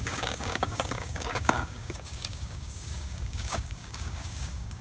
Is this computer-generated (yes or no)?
yes